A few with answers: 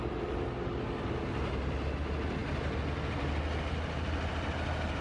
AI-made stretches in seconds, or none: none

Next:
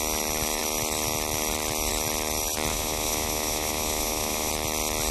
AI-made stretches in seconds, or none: 2.7-4.5 (autoencoder, DAC-VAE)